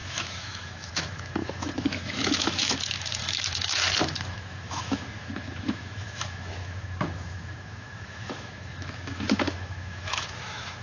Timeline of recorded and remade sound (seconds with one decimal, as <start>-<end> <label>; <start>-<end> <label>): 0.0-10.8 remade